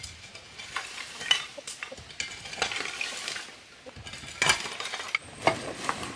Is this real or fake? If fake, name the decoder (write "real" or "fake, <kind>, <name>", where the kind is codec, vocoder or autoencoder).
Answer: real